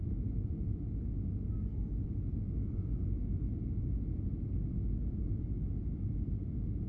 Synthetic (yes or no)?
no